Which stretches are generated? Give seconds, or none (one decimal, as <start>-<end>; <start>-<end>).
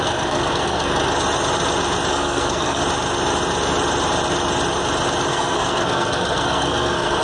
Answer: 0.0-0.9; 2.1-2.8; 5.3-7.2